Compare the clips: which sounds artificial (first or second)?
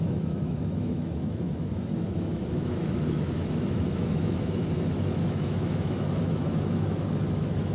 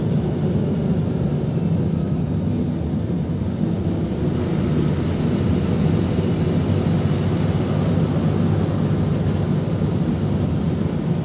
first